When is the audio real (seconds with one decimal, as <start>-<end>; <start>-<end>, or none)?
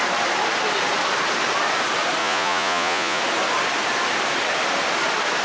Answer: 0.0-2.2; 3.2-5.4